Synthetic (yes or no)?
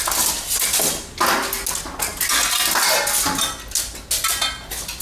no